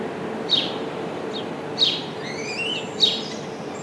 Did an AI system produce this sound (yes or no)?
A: no